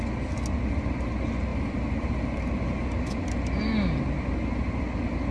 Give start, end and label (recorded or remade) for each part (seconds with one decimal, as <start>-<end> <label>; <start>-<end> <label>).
0.0-5.3 recorded